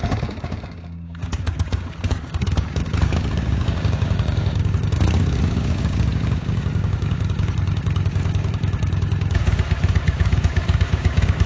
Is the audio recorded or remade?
remade